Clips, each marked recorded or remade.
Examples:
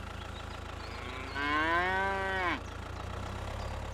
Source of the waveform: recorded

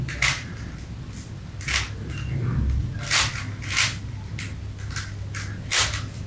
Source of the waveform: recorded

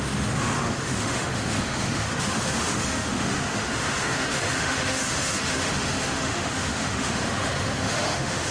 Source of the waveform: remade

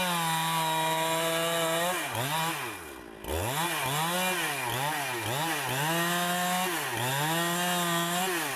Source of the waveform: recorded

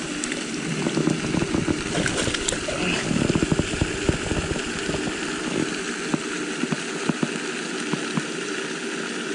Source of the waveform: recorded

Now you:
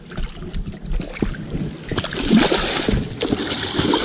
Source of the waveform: recorded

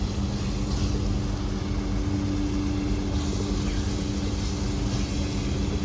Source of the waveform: recorded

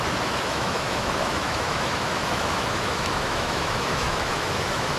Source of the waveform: remade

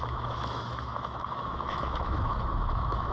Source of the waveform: remade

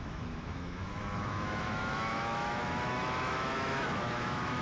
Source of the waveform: remade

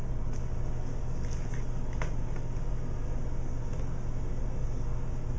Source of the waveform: recorded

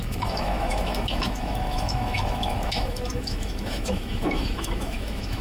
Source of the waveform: remade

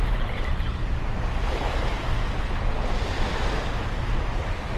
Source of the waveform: recorded